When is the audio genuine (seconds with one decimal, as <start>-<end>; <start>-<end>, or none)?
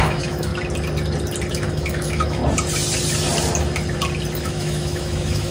0.5-1.5; 2.4-4.4